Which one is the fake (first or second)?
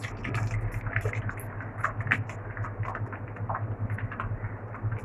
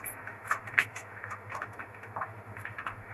second